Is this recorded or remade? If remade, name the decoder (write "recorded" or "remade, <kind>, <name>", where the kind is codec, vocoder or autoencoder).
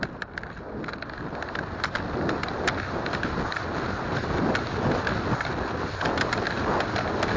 recorded